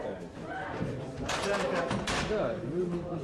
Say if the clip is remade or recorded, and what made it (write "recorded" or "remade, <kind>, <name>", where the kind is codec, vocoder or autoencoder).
remade, vocoder, BigVGAN v2